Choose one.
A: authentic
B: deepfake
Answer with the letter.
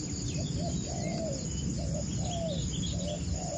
A